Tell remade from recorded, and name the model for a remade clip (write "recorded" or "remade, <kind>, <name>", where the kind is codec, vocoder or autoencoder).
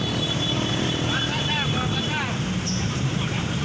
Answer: remade, vocoder, BigVGAN v2